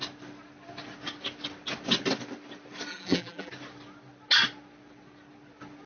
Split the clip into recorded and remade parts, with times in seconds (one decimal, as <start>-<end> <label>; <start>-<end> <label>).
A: 0.0-2.9 recorded; 2.9-3.5 remade; 3.5-5.9 recorded